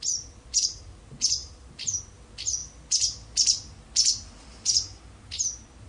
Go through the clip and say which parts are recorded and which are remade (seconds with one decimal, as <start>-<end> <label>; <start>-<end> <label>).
0.0-5.9 recorded